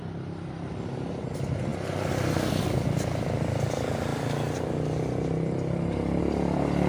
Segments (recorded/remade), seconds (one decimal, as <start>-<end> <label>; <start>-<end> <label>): 0.0-6.9 recorded